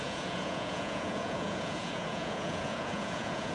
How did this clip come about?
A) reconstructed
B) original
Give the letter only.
A